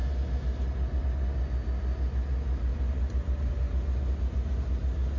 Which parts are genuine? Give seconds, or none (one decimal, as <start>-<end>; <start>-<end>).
0.0-2.7; 3.5-5.2